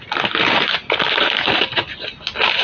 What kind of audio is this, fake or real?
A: real